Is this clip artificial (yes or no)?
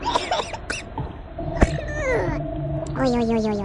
no